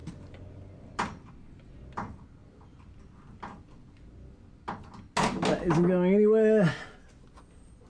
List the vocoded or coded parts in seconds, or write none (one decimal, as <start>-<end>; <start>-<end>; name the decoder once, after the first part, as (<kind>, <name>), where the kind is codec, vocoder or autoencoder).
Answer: none